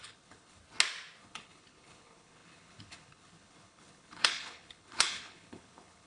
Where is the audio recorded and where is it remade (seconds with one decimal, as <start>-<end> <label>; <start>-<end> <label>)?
0.0-0.6 remade; 0.6-1.2 recorded; 1.2-6.1 remade